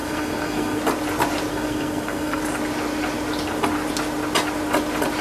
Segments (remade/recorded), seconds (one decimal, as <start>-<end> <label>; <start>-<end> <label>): 0.0-0.8 remade; 0.8-1.5 recorded; 1.5-2.4 remade; 2.4-5.2 recorded